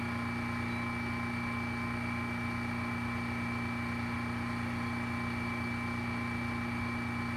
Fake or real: real